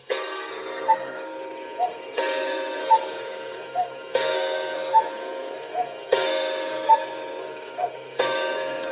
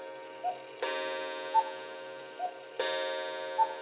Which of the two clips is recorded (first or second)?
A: second